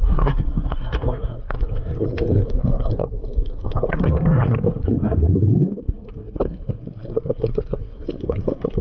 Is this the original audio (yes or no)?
no